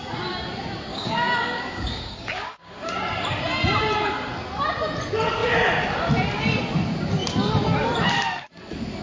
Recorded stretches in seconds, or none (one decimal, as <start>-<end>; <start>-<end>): 0.0-0.9; 2.9-9.0